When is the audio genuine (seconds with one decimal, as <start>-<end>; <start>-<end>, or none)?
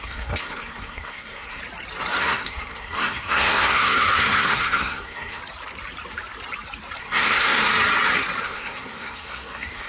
1.6-2.2; 5.4-7.0; 7.6-8.4